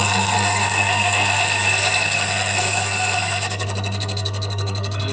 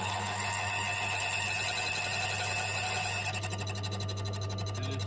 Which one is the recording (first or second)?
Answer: second